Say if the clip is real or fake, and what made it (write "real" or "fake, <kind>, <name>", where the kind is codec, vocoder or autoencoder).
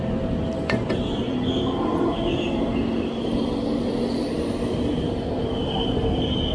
real